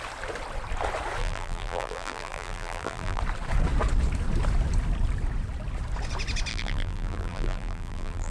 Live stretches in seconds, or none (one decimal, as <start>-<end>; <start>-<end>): 0.0-1.2; 3.2-6.5